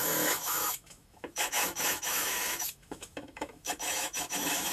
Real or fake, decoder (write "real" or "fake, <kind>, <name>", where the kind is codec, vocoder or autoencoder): fake, autoencoder, DAC-VAE